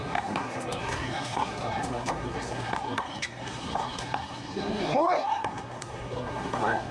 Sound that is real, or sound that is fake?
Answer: fake